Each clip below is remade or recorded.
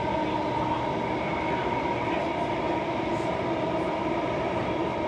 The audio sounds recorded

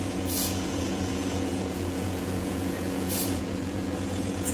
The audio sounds remade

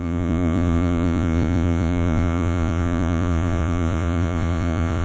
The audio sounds remade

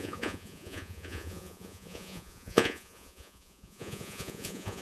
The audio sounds remade